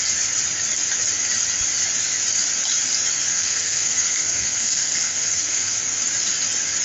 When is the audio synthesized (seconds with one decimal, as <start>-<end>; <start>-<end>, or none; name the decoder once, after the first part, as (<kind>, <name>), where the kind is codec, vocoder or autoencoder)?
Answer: 3.3-5.8 (codec, SNAC)